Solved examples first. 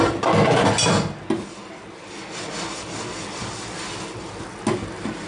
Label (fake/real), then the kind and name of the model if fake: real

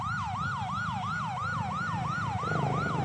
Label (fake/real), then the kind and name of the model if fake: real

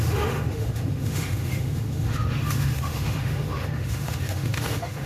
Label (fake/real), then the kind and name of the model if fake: fake, autoencoder, DAC-VAE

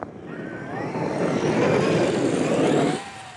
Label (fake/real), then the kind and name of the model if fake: real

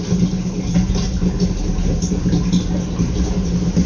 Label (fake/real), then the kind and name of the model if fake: real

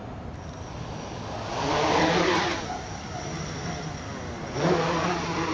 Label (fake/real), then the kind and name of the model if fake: real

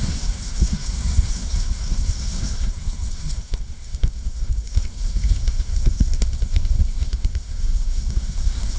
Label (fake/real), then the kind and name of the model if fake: fake, codec, SNAC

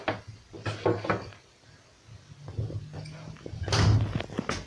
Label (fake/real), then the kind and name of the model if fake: real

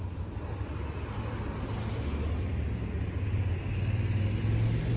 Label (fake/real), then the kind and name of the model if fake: real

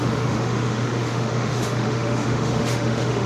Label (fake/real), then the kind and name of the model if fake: fake, autoencoder, DAC-VAE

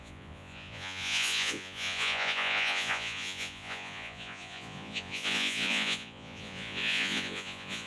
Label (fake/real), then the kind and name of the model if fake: fake, vocoder, Vocos